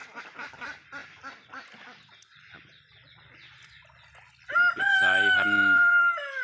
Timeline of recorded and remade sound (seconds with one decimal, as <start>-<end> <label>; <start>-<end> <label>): 0.0-1.0 remade; 1.0-4.8 recorded; 4.8-6.4 remade